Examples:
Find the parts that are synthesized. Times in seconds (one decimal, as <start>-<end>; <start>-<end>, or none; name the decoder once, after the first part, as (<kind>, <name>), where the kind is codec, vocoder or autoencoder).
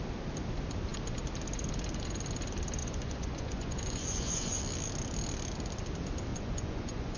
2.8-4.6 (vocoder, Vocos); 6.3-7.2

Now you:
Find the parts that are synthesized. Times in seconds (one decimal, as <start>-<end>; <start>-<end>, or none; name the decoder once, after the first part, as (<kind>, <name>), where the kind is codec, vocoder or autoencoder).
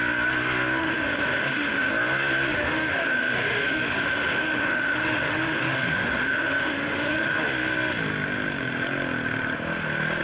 0.8-1.9 (autoencoder, DAC-VAE); 2.5-7.4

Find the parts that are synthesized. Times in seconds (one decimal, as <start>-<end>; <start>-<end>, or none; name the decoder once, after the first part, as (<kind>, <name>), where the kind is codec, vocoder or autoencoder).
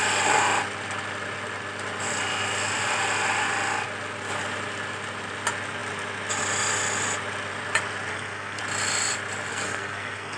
8.1-8.6 (codec, SNAC); 9.5-10.4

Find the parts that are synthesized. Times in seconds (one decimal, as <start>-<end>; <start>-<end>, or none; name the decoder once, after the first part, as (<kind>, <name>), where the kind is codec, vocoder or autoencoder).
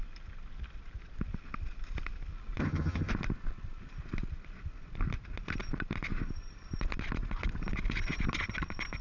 2.6-3.1 (vocoder, HiFi-GAN)